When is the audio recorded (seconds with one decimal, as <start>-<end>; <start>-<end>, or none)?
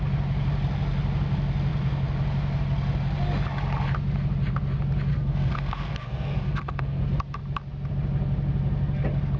0.0-5.1; 7.0-9.4